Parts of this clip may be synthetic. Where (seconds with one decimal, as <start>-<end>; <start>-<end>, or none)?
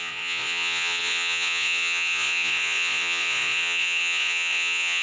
0.0-5.0